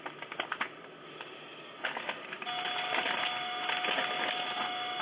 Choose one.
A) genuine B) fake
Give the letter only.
A